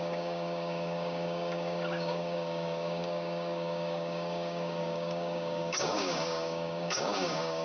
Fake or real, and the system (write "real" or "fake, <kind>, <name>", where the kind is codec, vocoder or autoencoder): fake, codec, DAC